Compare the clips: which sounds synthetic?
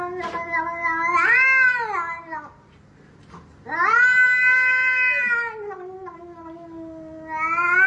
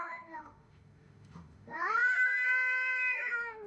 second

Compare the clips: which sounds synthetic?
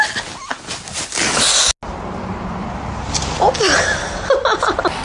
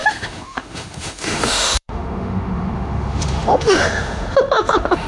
second